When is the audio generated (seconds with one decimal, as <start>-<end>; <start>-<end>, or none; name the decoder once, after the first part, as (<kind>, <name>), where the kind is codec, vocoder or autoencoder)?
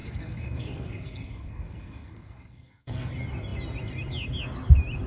0.0-3.1 (codec, SNAC)